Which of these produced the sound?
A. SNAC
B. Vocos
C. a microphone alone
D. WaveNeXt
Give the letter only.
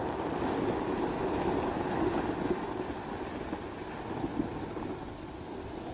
C